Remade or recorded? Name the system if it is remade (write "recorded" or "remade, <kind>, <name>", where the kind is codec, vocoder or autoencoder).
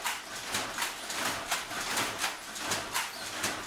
recorded